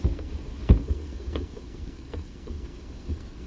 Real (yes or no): no